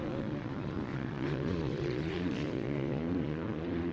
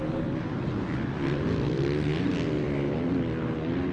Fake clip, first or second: first